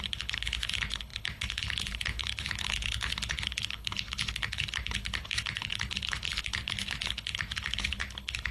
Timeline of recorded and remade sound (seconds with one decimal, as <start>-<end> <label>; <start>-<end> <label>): 0.0-8.5 remade